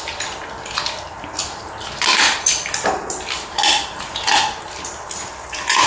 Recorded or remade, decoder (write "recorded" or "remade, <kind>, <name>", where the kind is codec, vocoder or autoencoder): recorded